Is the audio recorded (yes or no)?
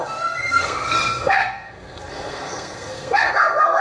no